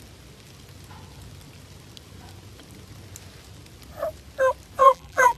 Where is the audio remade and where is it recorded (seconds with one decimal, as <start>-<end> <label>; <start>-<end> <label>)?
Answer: 0.0-4.8 recorded; 4.8-5.4 remade